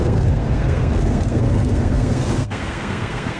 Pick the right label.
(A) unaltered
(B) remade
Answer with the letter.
B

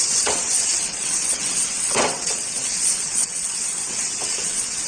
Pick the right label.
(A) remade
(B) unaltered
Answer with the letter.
A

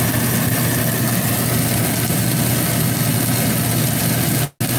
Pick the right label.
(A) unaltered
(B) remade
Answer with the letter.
A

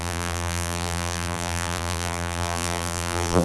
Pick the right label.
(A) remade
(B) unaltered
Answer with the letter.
A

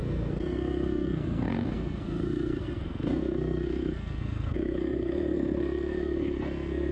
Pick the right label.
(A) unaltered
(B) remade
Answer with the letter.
B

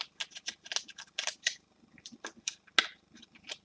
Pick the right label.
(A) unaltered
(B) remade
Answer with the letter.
A